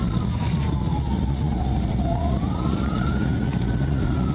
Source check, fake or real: fake